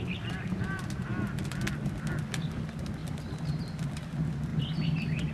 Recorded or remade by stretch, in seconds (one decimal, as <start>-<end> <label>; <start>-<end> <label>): 0.0-3.0 recorded; 3.0-3.6 remade; 3.6-5.3 recorded